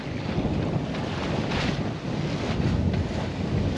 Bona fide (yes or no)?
yes